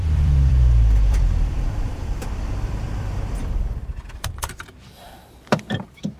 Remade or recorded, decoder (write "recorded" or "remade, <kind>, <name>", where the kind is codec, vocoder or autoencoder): remade, vocoder, BigVGAN v2